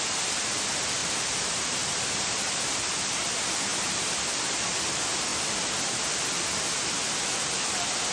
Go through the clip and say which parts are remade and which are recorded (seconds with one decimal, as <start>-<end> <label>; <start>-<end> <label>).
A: 0.0-1.0 recorded; 1.0-2.6 remade; 2.6-5.3 recorded; 5.3-6.4 remade; 6.4-8.1 recorded